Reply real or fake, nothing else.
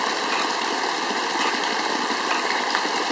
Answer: real